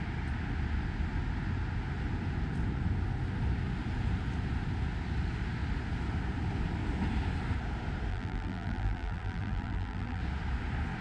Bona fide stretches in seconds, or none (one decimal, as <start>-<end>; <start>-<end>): 0.0-8.1; 10.2-11.0